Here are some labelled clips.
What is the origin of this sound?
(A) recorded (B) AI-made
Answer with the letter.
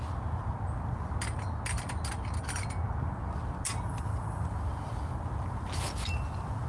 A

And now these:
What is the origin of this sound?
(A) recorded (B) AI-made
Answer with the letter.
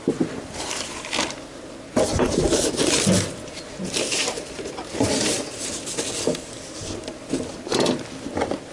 A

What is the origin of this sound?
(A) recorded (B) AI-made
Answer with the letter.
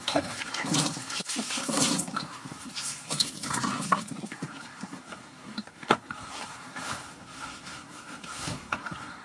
B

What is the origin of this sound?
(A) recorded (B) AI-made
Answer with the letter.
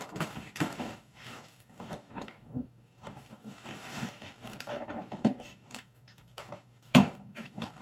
B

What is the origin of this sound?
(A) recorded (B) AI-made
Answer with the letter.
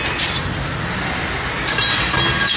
A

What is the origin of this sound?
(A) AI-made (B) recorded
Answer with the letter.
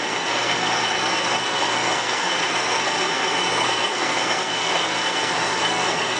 A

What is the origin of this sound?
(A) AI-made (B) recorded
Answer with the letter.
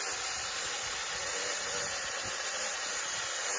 B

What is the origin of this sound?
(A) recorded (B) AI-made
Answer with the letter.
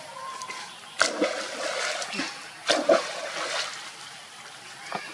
B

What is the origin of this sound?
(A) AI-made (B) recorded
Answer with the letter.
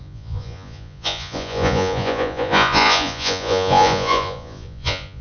A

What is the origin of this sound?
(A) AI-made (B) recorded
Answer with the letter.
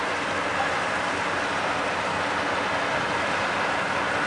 B